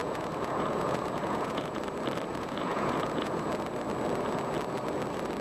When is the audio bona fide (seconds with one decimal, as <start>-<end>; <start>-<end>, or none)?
1.8-2.3; 3.5-5.4